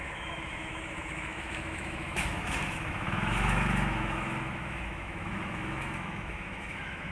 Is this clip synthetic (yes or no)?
yes